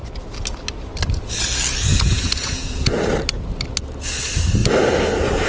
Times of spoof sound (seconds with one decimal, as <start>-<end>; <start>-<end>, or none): 1.9-2.9